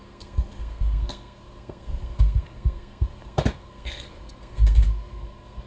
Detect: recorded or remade remade